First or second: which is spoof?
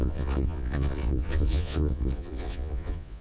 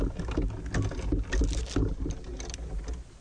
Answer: first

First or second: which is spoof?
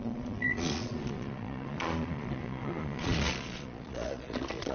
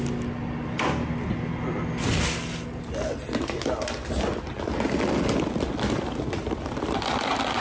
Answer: first